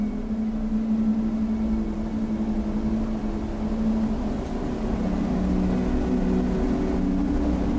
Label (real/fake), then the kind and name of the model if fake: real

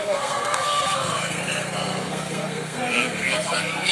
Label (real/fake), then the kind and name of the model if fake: fake, codec, SNAC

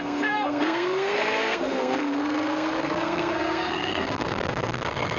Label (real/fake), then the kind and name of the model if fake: fake, codec, SNAC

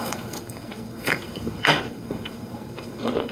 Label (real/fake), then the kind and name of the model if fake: fake, codec, SNAC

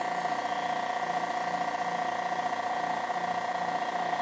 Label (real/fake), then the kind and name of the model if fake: real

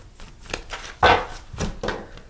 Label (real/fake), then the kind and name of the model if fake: real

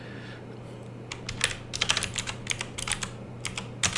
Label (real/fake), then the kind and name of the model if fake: real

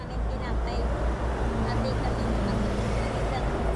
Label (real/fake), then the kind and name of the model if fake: real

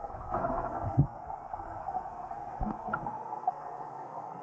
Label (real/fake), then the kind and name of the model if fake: fake, codec, SNAC